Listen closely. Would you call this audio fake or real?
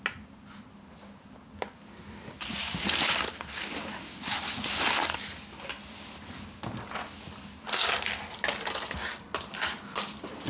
real